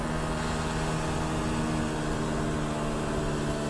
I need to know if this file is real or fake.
real